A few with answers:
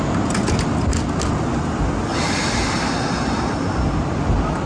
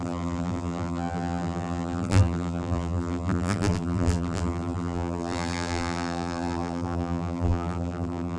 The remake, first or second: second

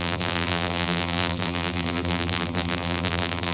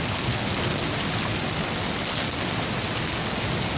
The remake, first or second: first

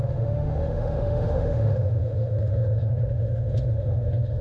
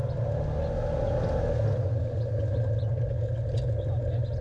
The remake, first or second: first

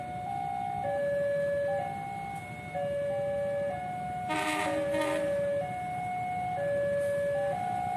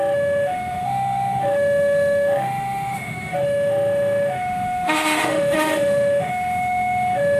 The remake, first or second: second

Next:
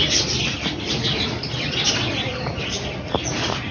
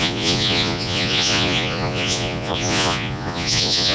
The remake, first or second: second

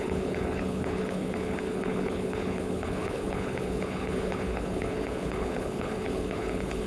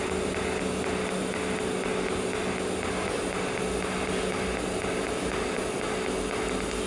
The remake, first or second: first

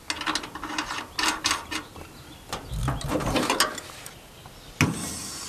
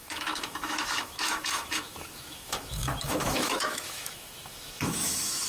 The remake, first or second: second